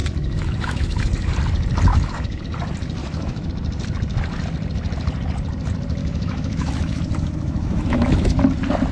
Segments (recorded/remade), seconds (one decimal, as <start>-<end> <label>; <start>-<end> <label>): 0.0-1.3 remade; 1.3-1.9 recorded; 1.9-2.4 remade; 2.4-3.0 recorded; 3.0-3.5 remade; 3.5-6.0 recorded; 6.0-8.4 remade; 8.4-8.9 recorded